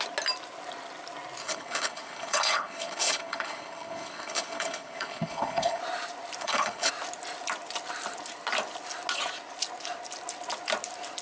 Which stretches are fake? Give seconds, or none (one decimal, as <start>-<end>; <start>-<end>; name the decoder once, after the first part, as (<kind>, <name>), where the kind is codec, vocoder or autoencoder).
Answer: 1.4-5.8 (codec, HILCodec); 6.4-6.9